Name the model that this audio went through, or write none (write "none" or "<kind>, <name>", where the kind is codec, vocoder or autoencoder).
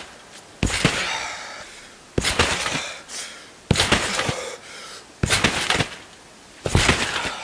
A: none